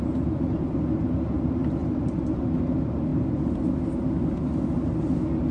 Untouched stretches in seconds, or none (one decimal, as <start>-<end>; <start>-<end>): 0.0-5.5